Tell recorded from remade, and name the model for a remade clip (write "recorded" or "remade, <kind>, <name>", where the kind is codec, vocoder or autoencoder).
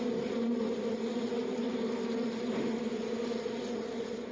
recorded